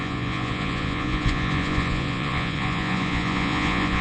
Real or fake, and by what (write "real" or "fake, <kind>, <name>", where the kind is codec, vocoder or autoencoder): fake, vocoder, Vocos